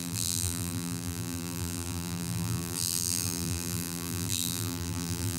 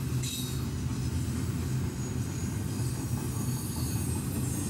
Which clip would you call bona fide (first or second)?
second